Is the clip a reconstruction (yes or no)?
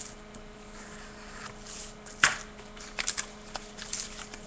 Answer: yes